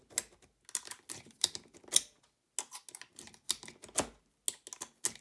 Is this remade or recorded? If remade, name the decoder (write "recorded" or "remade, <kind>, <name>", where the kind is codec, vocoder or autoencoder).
recorded